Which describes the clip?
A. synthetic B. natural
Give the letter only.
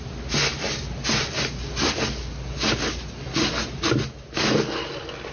B